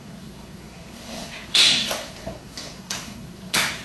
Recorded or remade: remade